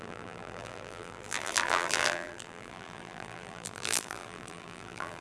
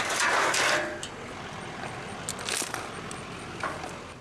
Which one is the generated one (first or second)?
first